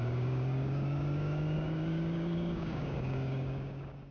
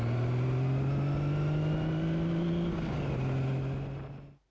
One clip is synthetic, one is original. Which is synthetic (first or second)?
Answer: first